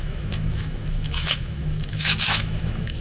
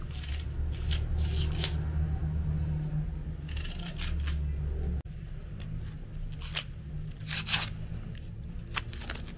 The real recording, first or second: second